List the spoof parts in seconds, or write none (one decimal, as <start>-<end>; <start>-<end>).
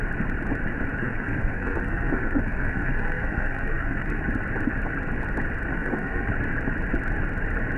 1.0-4.2; 5.7-6.3